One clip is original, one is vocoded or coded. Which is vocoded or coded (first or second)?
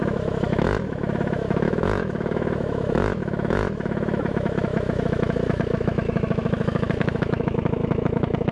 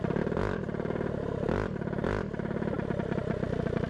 first